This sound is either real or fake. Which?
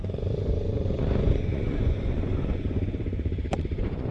fake